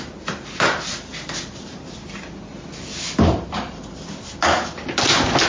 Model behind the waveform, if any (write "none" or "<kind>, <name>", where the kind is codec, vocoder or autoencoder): none